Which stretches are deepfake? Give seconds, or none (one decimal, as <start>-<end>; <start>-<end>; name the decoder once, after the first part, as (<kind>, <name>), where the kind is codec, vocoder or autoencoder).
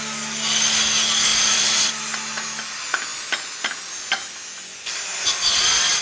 1.3-1.9 (vocoder, BigVGAN v2)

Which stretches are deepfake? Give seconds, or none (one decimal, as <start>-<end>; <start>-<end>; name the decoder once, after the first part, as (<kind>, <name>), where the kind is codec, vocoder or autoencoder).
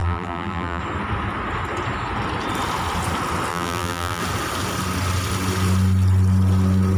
0.0-0.8 (vocoder, BigVGAN v2); 3.5-4.2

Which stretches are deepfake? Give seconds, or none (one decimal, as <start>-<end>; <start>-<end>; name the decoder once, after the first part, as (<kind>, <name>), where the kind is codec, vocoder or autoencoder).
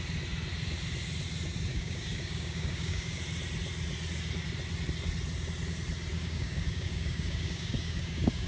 1.7-3.2 (codec, DAC); 6.1-8.5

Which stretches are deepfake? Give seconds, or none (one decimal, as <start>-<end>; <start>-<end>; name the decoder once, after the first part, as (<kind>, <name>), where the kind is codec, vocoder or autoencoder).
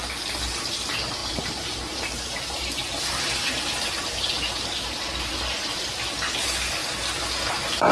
1.2-5.9 (vocoder, BigVGAN v2)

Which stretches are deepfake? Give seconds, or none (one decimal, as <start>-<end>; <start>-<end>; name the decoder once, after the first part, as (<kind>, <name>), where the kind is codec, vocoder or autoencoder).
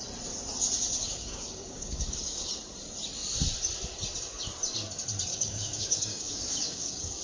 1.0-2.5 (codec, DAC); 5.3-7.2